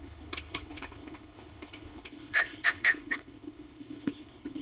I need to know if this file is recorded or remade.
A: remade